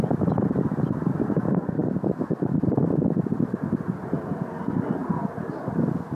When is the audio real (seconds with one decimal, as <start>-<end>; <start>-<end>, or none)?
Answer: 0.0-6.1